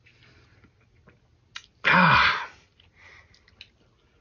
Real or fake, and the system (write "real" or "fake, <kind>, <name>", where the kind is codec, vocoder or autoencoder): real